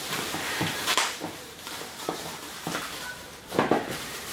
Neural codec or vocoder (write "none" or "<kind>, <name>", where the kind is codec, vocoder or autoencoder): vocoder, BigVGAN v2